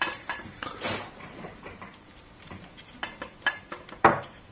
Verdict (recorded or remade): remade